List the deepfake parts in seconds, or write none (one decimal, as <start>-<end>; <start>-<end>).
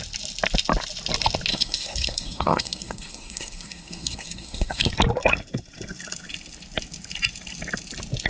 1.5-4.9